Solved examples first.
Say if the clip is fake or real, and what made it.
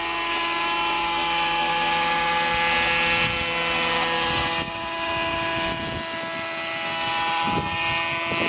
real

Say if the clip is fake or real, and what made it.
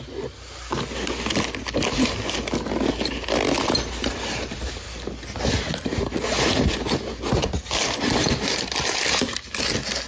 real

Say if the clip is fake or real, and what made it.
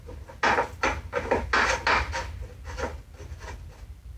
real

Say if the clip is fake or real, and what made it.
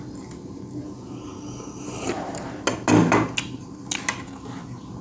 real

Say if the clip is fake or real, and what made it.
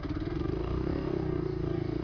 fake, codec, DAC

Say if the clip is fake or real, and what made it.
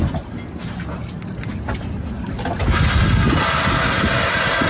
real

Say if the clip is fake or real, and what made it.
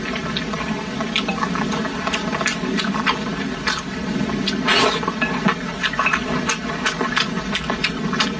real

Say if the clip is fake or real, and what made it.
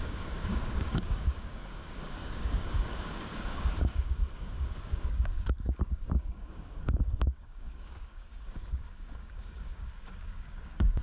fake, codec, DAC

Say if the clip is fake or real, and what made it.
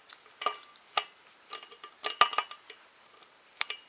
real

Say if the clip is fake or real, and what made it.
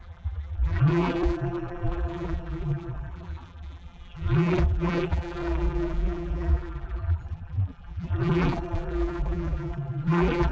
fake, vocoder, BigVGAN v2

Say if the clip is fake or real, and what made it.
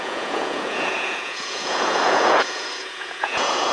fake, vocoder, Vocos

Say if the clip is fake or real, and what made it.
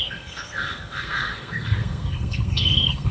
fake, codec, SNAC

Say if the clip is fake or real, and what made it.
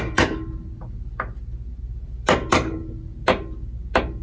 real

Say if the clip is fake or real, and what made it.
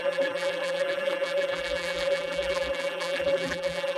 fake, vocoder, BigVGAN v2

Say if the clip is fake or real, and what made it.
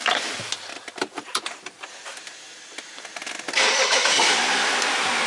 real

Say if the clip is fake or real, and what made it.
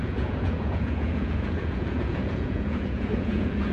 fake, vocoder, Vocos